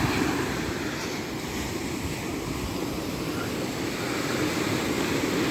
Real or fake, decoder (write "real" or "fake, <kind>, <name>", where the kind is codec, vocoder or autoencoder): real